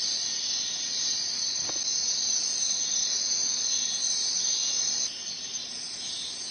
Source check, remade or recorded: recorded